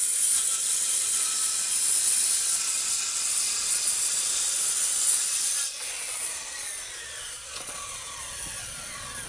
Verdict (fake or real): fake